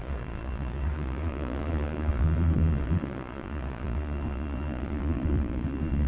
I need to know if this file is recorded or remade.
remade